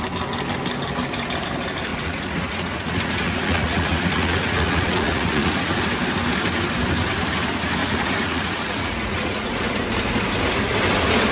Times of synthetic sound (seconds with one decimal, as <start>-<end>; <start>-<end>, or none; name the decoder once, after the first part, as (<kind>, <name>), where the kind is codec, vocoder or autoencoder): 1.9-5.8 (vocoder, Vocos); 7.8-9.6